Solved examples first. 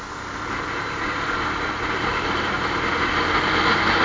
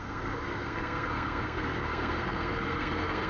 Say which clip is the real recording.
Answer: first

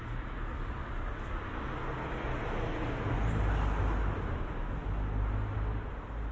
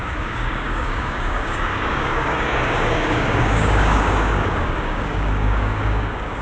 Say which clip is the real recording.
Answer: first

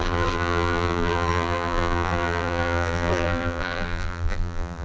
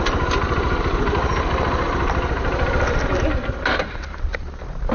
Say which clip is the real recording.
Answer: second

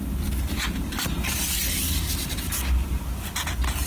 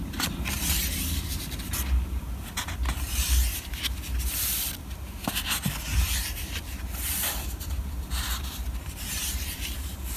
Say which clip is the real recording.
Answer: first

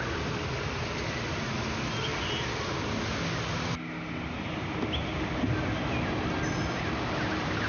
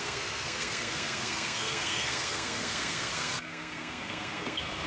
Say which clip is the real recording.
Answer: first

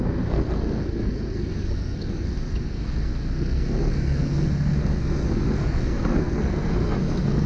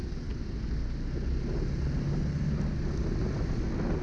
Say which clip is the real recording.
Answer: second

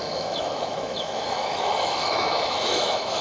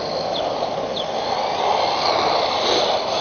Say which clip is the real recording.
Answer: second